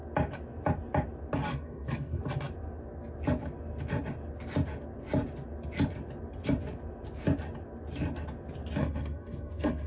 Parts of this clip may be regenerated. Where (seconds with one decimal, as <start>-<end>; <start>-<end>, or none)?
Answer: 1.5-2.2; 8.8-9.9